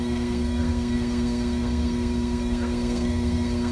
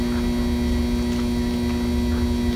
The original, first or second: second